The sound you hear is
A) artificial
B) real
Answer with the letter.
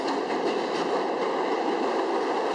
A